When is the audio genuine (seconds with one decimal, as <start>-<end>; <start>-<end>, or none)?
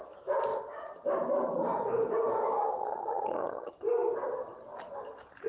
0.0-2.8; 3.7-5.5